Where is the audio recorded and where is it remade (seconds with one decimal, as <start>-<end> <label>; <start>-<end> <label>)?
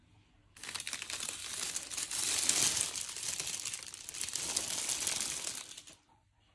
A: 0.0-6.5 recorded